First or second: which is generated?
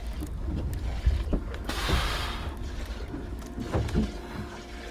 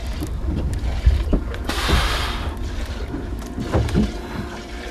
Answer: second